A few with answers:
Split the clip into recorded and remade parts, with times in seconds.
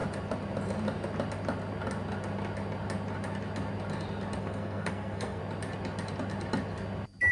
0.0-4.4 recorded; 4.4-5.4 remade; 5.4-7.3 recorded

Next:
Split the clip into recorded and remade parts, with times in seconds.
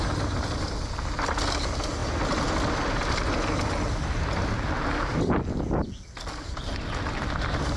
0.0-7.8 recorded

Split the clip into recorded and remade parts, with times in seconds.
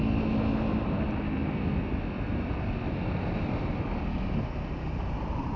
0.0-5.6 recorded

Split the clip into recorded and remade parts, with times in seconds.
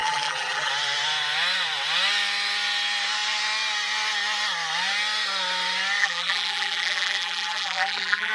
0.0-0.7 remade; 0.7-6.0 recorded; 6.0-8.3 remade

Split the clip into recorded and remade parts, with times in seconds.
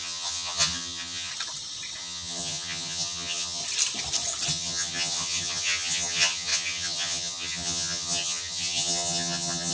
0.0-1.3 remade; 1.3-2.0 recorded; 2.0-3.6 remade; 3.6-4.5 recorded; 4.5-9.7 remade